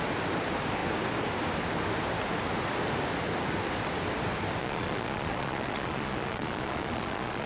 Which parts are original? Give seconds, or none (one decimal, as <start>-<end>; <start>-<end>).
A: 0.0-4.6